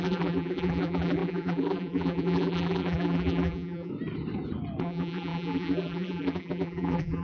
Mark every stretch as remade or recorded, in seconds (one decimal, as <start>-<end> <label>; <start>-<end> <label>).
0.0-3.9 remade; 3.9-4.8 recorded; 4.8-7.2 remade